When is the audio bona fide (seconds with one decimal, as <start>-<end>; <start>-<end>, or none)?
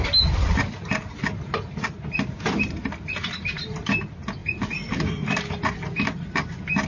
0.0-6.9